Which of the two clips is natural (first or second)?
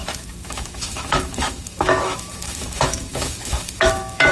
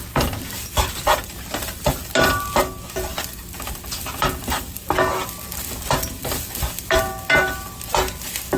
second